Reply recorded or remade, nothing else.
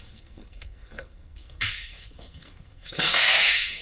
remade